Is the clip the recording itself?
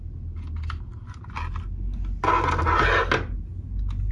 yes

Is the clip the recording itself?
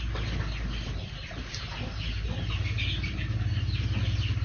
yes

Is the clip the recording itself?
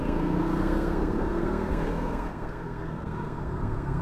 no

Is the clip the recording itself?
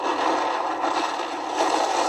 yes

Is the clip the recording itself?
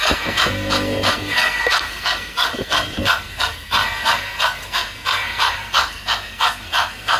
no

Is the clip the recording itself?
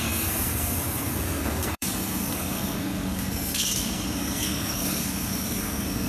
no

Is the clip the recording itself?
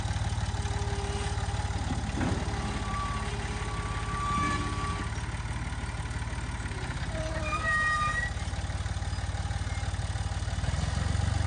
yes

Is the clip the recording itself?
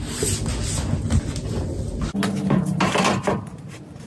yes